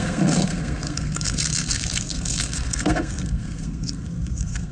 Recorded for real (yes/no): no